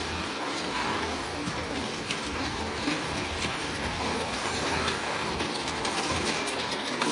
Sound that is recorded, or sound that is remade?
remade